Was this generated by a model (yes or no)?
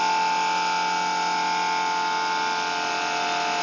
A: no